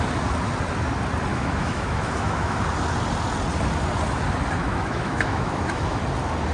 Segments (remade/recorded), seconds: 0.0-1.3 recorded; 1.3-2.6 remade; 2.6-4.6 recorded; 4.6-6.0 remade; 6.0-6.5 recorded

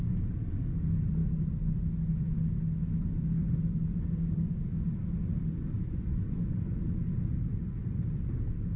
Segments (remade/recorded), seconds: 0.0-8.8 recorded